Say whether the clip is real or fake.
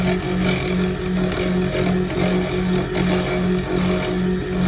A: real